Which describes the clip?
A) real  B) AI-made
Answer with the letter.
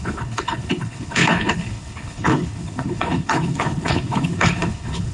B